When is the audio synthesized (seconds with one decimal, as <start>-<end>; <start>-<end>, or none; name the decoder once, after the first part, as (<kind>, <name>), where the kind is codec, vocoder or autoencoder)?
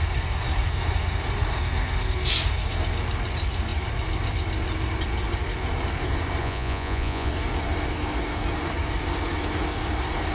6.4-7.3 (vocoder, Vocos)